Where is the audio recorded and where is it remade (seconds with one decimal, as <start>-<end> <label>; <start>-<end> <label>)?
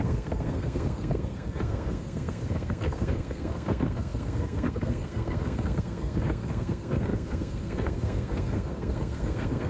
0.0-9.7 remade